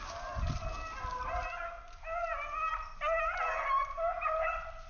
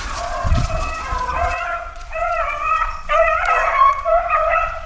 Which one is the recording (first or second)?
first